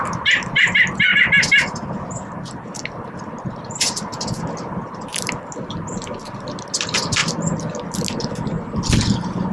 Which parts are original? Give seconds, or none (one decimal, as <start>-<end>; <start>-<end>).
0.0-9.5